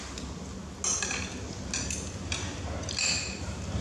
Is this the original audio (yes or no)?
yes